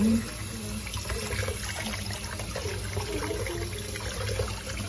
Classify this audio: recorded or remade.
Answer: recorded